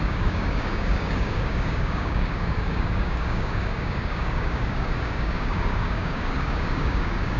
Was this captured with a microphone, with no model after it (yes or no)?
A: no